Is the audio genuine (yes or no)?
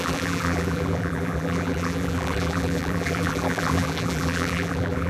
no